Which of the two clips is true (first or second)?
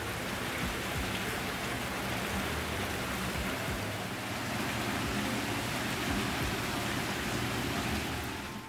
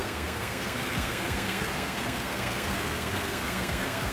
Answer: first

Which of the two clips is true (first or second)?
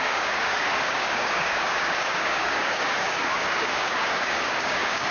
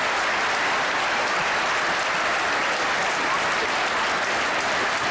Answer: second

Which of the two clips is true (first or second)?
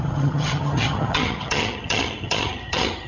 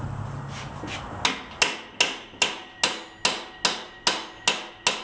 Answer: second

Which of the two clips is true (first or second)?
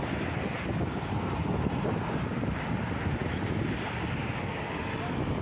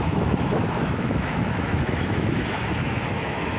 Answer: first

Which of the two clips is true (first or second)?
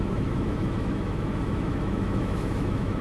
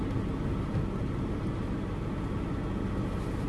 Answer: second